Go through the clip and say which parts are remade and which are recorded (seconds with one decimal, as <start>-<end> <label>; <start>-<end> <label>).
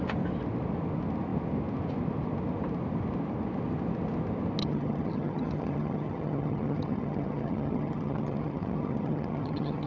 0.0-4.6 recorded; 4.6-9.9 remade